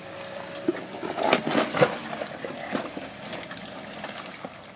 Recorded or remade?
recorded